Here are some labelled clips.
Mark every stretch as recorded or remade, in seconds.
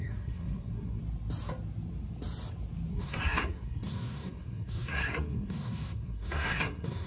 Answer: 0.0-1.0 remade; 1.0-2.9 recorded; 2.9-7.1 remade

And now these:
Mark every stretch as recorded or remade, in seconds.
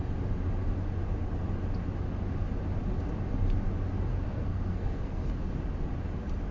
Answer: 0.0-4.1 recorded; 4.1-5.3 remade; 5.3-6.5 recorded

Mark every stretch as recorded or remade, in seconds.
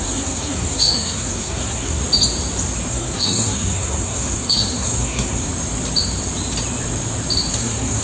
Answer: 0.0-2.0 remade; 2.0-2.9 recorded; 2.9-5.5 remade; 5.5-7.5 recorded; 7.5-8.0 remade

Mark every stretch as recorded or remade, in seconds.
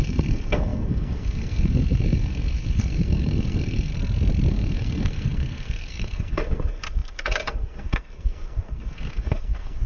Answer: 0.0-3.9 remade; 3.9-4.5 recorded; 4.5-9.9 remade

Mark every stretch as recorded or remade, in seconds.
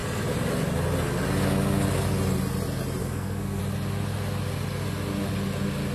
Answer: 0.0-3.0 recorded; 3.0-3.6 remade; 3.6-5.9 recorded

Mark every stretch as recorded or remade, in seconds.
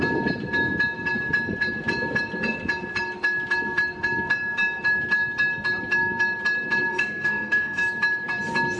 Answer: 0.0-6.9 recorded; 6.9-7.8 remade; 7.8-8.8 recorded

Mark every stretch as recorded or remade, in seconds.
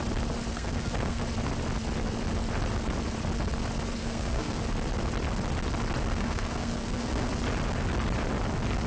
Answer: 0.0-0.5 recorded; 0.5-1.2 remade; 1.2-4.0 recorded; 4.0-4.6 remade; 4.6-6.1 recorded; 6.1-7.3 remade; 7.3-8.9 recorded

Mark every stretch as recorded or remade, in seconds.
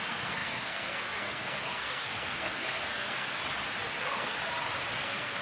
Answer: 0.0-3.4 remade; 3.4-4.0 recorded; 4.0-4.4 remade; 4.4-5.0 recorded; 5.0-5.4 remade